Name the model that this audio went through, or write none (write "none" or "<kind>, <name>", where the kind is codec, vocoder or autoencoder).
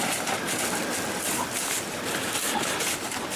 none